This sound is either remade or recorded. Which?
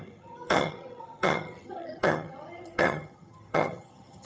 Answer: remade